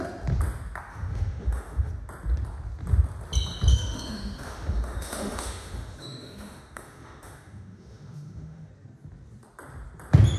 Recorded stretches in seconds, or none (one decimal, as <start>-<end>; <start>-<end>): 0.0-0.9; 1.9-3.7; 8.7-10.4